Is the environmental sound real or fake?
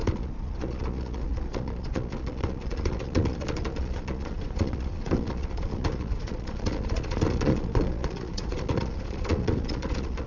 fake